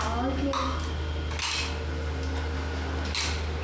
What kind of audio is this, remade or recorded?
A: recorded